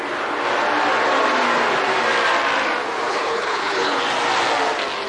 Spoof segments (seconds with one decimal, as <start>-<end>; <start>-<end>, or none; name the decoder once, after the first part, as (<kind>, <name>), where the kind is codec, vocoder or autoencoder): 3.1-4.0 (codec, HILCodec)